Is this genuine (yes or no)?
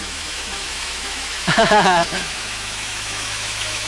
no